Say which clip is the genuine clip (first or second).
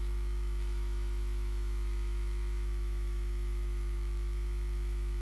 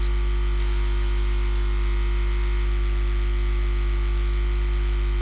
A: second